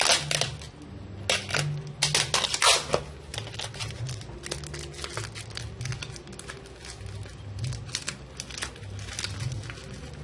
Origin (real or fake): real